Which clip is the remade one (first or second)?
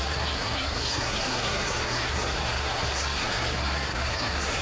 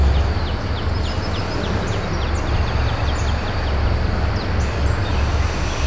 first